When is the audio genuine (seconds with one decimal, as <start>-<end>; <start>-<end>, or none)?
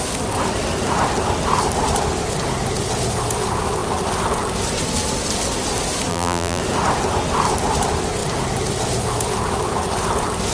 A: 0.0-6.1; 6.6-10.5